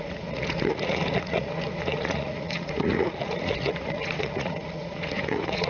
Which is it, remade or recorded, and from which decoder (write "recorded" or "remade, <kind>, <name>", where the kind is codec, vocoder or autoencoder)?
remade, vocoder, Vocos